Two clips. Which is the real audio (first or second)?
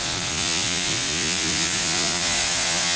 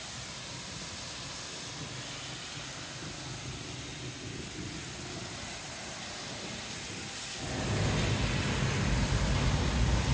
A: second